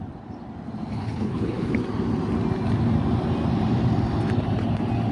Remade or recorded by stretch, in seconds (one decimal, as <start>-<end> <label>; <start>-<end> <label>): 0.0-0.9 recorded; 0.9-1.7 remade; 1.7-5.1 recorded